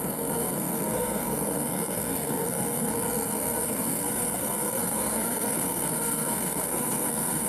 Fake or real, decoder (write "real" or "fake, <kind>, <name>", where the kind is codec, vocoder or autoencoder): fake, codec, SNAC